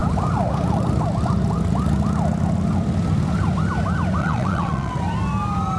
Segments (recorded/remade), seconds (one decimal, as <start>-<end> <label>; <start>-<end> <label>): 0.0-4.2 recorded; 4.2-5.0 remade; 5.0-5.8 recorded